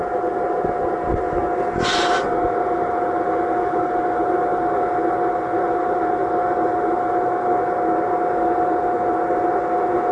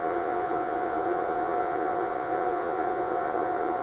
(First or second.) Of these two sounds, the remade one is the second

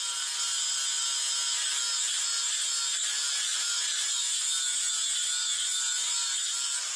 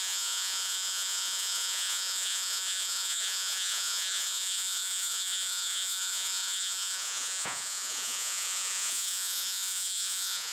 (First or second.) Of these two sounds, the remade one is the second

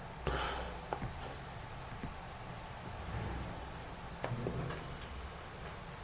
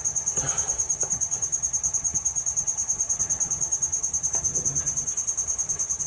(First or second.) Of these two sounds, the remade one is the second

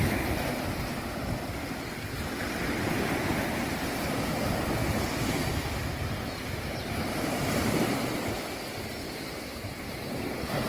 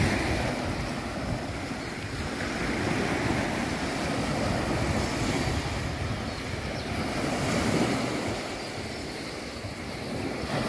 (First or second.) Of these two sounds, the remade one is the first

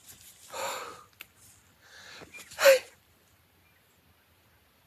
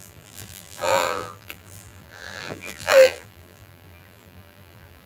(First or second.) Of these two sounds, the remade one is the second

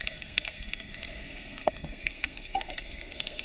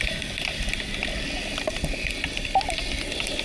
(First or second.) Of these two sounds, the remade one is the first